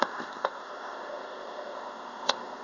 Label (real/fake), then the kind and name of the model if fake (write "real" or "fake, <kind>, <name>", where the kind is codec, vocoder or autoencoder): fake, codec, ZipCodec